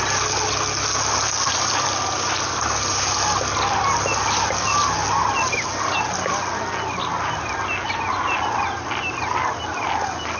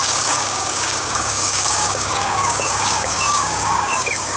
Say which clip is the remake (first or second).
second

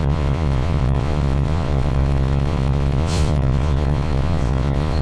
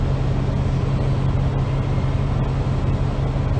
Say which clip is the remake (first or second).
first